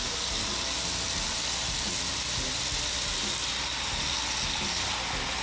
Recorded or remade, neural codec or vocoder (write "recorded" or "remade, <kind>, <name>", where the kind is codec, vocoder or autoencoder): recorded